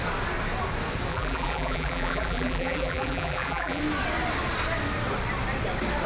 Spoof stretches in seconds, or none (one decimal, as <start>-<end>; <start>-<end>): 1.1-3.8